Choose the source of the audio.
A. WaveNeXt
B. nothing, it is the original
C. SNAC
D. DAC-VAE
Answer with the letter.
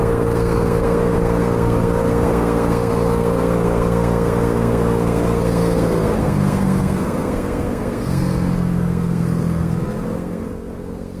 C